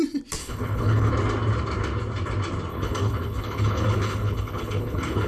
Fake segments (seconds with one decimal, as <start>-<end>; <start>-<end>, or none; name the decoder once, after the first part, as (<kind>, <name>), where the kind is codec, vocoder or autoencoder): 0.4-1.1 (codec, HILCodec); 2.7-5.3